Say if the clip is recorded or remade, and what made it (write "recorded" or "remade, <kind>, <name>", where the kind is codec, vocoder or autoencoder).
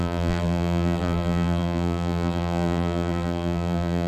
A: remade, vocoder, BigVGAN v2